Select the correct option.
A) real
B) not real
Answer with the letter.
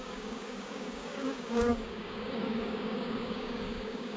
B